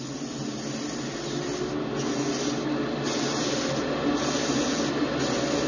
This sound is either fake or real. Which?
real